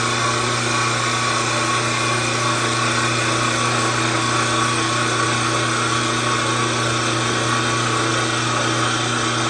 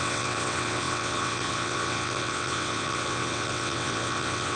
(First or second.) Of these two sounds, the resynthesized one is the second